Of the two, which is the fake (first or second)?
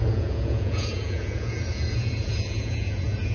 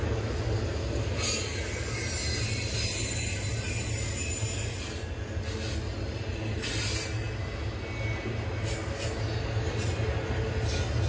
first